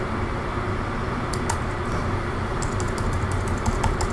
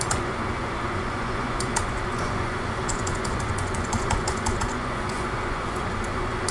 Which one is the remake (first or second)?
second